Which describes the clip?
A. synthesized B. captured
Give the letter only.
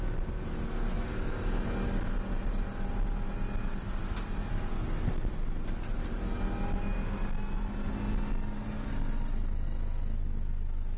B